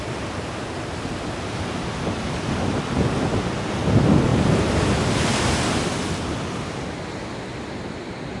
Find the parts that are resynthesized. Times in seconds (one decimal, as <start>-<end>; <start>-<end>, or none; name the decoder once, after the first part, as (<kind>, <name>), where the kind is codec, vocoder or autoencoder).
none